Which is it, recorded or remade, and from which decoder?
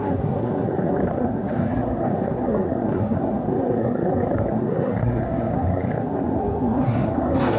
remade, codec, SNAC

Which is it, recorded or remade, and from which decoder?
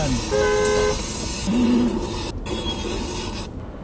recorded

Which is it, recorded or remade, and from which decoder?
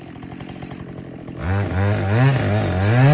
recorded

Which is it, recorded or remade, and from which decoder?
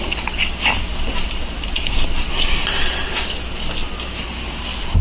recorded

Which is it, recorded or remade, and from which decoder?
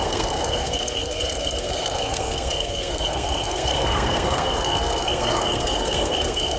remade, codec, SNAC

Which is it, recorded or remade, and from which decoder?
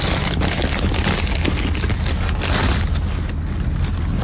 recorded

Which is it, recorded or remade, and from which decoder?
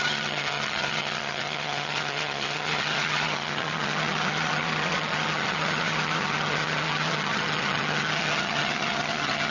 remade, vocoder, HiFi-GAN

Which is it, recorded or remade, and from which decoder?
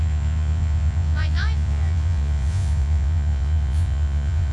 remade, vocoder, Vocos